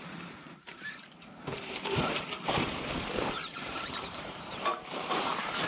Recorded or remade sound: remade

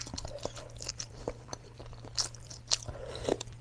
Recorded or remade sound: remade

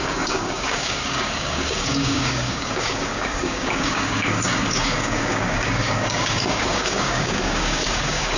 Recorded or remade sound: remade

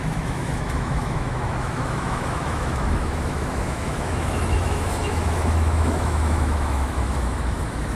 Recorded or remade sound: remade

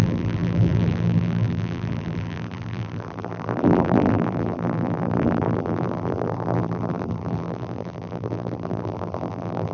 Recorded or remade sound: remade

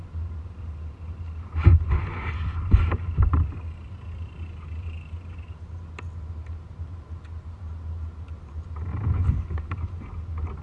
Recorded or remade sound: recorded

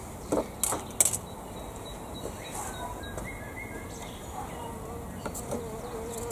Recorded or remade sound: recorded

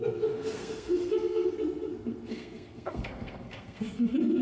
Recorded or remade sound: remade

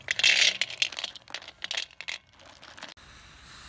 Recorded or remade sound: recorded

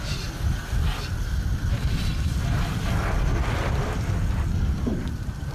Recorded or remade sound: recorded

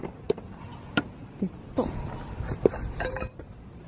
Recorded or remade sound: recorded